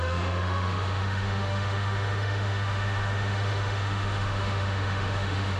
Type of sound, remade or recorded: remade